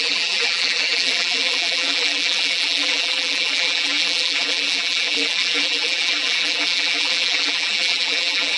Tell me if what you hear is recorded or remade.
remade